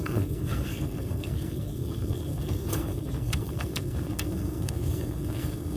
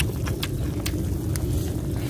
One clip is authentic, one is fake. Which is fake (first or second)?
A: first